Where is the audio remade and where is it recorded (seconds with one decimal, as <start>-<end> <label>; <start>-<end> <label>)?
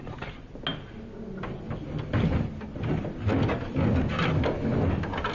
0.0-5.3 recorded